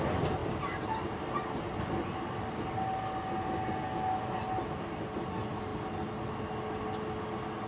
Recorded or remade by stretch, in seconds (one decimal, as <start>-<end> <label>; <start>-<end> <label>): 0.0-7.7 recorded